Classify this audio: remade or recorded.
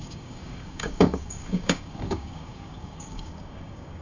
remade